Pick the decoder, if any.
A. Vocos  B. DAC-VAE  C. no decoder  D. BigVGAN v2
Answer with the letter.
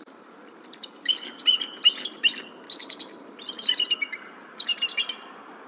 D